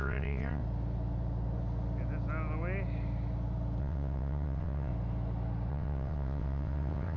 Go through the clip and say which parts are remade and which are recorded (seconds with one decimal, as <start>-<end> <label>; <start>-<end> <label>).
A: 0.0-0.6 remade; 0.6-3.8 recorded; 3.8-4.9 remade; 4.9-5.7 recorded; 5.7-7.2 remade